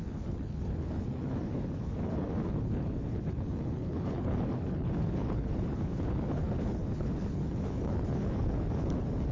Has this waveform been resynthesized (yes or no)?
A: yes